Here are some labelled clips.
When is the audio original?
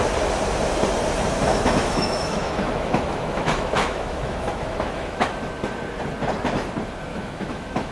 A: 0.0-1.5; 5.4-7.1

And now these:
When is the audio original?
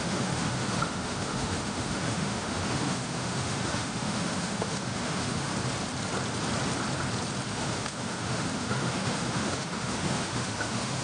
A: 5.5-7.5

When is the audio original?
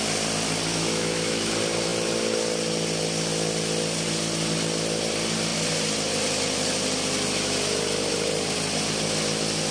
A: 0.0-0.7; 1.5-9.7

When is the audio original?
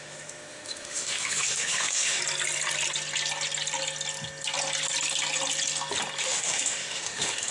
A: 2.2-6.2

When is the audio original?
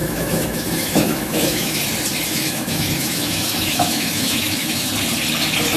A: 1.8-2.3; 4.9-5.8